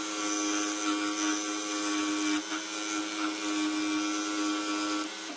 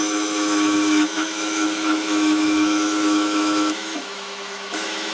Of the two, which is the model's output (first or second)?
second